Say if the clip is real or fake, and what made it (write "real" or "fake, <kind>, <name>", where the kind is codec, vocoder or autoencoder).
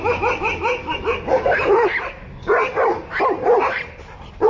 real